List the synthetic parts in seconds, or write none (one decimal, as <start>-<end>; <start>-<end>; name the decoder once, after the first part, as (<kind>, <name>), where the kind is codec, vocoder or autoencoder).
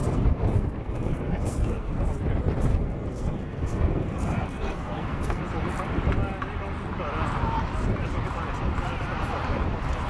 0.0-2.0 (codec, SNAC); 2.7-5.4